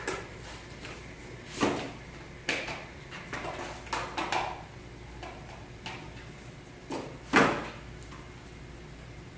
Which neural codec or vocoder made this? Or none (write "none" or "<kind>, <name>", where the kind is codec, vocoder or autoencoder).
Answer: none